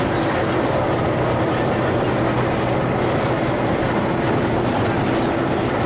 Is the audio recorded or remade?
recorded